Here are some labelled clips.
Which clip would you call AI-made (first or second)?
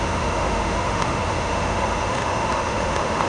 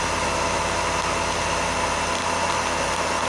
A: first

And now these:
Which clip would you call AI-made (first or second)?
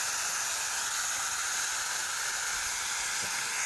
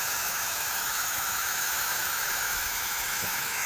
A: second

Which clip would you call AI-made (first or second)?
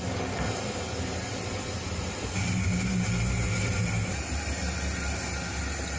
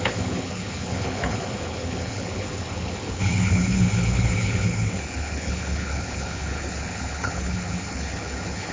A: second